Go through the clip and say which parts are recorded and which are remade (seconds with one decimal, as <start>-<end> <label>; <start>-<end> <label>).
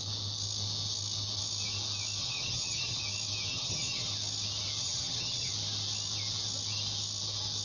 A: 0.0-2.2 recorded; 2.2-3.0 remade; 3.0-3.5 recorded; 3.5-4.1 remade; 4.1-4.8 recorded; 4.8-5.5 remade; 5.5-7.6 recorded